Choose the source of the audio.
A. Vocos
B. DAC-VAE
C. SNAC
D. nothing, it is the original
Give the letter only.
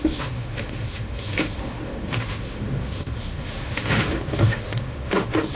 B